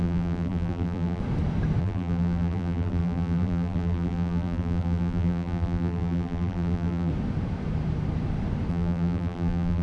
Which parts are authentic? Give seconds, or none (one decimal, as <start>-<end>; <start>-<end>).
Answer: 1.2-1.8; 7.1-8.7